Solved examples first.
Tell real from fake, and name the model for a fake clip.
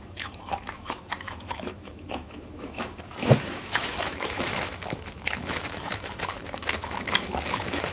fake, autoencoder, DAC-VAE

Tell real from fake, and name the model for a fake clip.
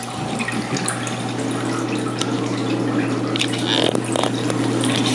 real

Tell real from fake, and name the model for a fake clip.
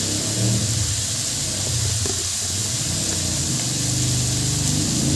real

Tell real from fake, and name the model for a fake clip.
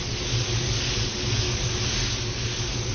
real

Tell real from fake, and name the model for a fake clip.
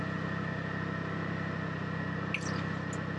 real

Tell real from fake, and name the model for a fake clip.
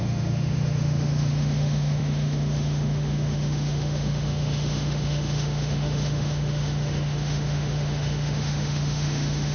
fake, autoencoder, DAC-VAE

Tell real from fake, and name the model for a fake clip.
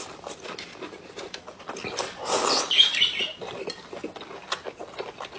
real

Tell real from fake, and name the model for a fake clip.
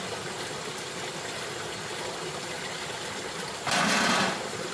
real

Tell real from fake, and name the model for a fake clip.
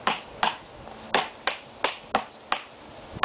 real